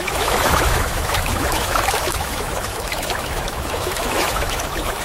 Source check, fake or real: fake